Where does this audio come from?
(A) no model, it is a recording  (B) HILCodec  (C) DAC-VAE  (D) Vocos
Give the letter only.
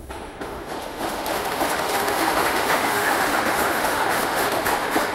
C